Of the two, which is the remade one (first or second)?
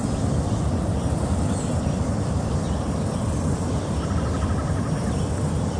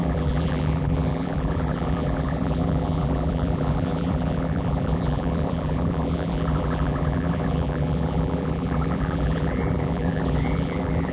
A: second